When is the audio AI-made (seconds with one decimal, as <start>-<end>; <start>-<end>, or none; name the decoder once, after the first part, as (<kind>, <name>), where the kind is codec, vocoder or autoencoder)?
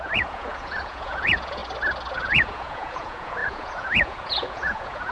0.0-1.6 (vocoder, Vocos); 2.1-5.1